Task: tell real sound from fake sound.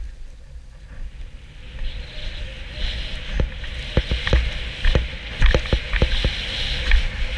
real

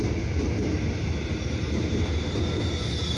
real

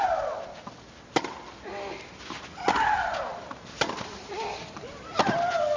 real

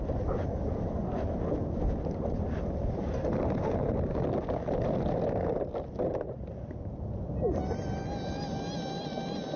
real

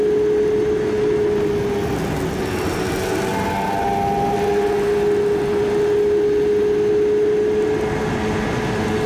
real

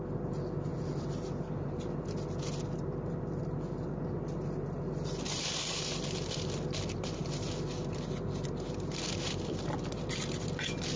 real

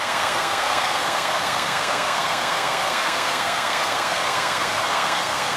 fake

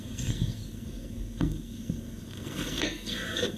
fake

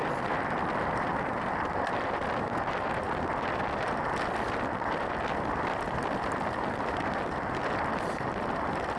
real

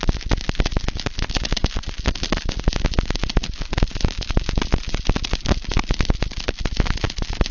real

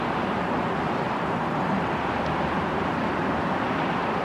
fake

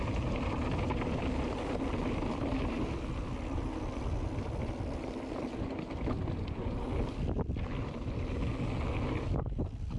real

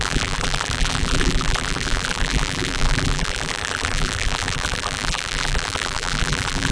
fake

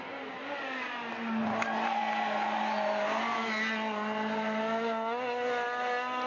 real